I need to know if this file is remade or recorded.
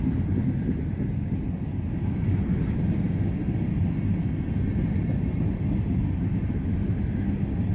recorded